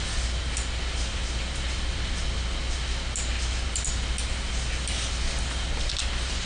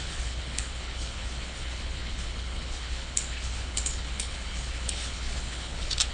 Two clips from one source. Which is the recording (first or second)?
first